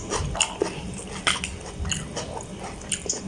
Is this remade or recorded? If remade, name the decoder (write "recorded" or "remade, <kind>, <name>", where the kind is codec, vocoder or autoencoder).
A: recorded